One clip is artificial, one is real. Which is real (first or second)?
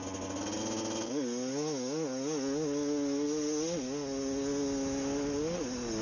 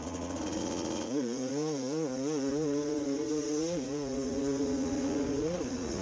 first